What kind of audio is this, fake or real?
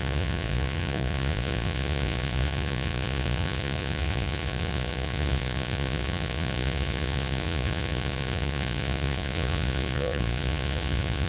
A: fake